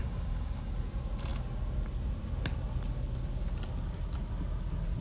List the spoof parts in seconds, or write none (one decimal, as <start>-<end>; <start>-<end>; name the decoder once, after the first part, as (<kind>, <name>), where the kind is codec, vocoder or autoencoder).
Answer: 0.0-0.7 (codec, DAC)